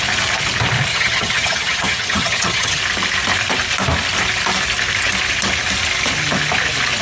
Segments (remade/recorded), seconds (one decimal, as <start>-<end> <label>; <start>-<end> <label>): 0.0-0.9 recorded; 0.9-2.8 remade; 2.8-7.0 recorded